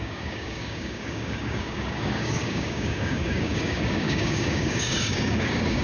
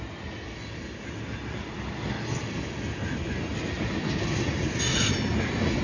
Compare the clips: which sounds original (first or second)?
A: second